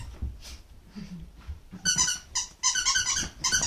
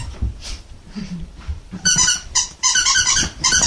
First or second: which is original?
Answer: first